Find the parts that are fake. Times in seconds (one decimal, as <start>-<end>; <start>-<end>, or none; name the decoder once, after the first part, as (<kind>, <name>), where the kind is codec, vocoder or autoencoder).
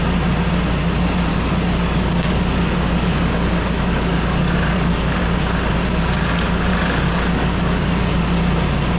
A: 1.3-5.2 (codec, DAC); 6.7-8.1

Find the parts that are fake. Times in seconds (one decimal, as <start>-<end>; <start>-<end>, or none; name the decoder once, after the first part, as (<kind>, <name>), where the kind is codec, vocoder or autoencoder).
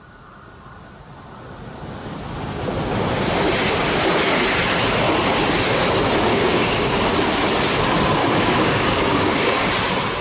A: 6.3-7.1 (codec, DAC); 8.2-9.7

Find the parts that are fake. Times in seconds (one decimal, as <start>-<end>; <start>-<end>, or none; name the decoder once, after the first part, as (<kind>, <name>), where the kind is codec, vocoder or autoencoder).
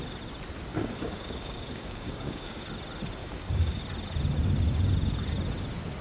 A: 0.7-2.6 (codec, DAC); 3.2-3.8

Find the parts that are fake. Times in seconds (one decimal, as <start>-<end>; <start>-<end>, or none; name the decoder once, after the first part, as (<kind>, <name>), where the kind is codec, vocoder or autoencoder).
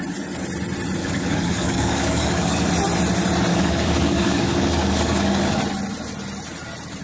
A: 1.0-2.7 (codec, DAC); 3.5-5.6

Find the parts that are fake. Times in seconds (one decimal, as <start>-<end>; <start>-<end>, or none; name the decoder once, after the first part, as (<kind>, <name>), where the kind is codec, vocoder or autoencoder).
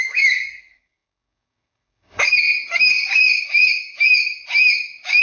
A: 0.0-5.2 (codec, DAC)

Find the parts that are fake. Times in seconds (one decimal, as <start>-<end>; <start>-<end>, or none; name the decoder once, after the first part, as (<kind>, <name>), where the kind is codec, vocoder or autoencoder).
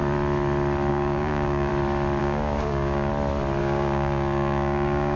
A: 0.9-1.7 (codec, DAC); 2.2-3.1; 3.6-5.2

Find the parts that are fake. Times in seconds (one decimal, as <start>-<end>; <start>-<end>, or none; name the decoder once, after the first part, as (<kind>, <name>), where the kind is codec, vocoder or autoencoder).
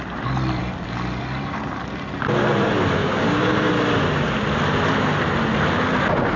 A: 3.0-3.7 (codec, DAC)